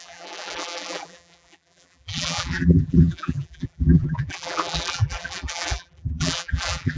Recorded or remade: remade